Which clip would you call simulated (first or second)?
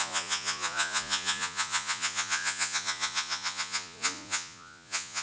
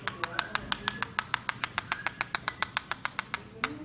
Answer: first